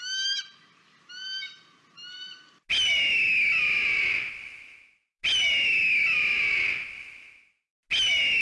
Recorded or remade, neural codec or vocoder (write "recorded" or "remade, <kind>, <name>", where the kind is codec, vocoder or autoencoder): recorded